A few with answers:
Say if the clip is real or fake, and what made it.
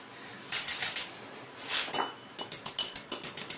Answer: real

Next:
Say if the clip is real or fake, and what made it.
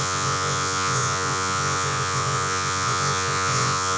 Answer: fake, vocoder, Vocos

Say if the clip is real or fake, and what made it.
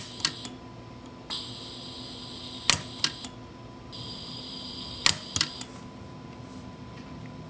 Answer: real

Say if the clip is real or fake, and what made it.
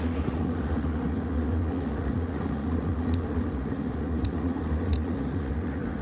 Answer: fake, vocoder, Vocos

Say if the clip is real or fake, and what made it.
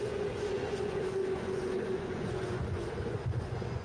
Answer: fake, vocoder, Vocos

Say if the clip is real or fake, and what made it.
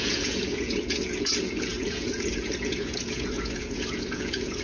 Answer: fake, vocoder, Vocos